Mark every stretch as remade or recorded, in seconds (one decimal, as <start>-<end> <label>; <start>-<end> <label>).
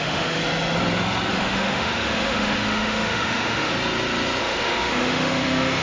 0.0-0.4 remade; 0.4-1.3 recorded; 1.3-3.7 remade; 3.7-4.4 recorded; 4.4-5.8 remade